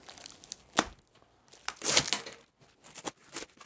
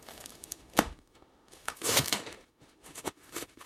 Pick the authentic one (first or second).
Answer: first